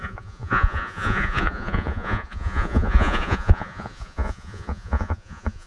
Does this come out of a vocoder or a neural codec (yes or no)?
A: yes